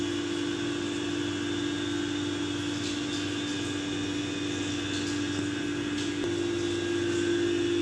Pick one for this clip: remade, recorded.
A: recorded